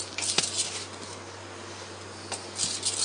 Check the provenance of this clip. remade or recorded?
recorded